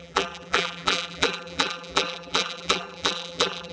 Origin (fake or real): fake